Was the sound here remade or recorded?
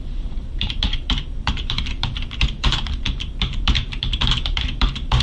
remade